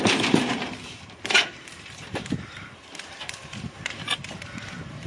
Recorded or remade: remade